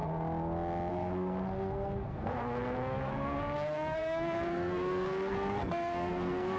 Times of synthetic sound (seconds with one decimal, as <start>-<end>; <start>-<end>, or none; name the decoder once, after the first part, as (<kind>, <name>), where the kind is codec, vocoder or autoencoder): 0.9-6.6 (codec, SNAC)